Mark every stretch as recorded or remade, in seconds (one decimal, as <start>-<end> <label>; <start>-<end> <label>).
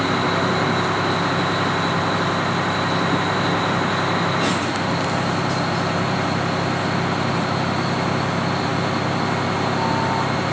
0.0-10.5 recorded